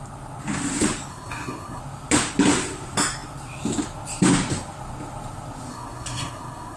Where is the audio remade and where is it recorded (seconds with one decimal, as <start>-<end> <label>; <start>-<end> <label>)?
0.0-1.1 recorded; 1.1-1.8 remade; 1.8-5.7 recorded; 5.7-6.8 remade